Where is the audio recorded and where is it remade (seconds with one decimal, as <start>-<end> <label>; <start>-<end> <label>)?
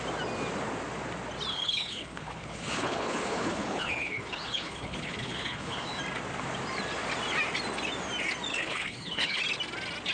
0.0-1.5 recorded; 1.5-6.0 remade; 6.0-8.5 recorded; 8.5-9.4 remade; 9.4-10.1 recorded